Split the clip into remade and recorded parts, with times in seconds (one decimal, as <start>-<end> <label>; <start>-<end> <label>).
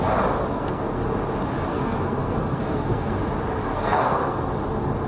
0.0-0.5 recorded; 0.5-1.0 remade; 1.0-1.7 recorded; 1.7-3.2 remade; 3.2-3.6 recorded; 3.6-4.5 remade; 4.5-5.1 recorded